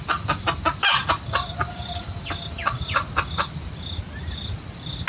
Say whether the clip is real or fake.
real